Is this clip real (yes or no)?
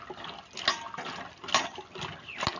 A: yes